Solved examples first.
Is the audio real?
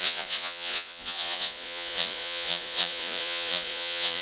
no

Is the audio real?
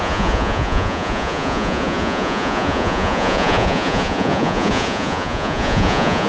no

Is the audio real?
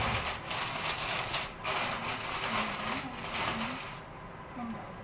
yes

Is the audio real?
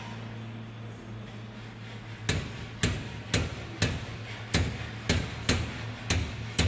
yes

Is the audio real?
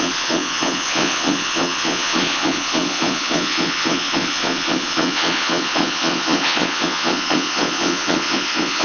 no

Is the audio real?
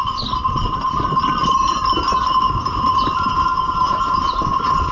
yes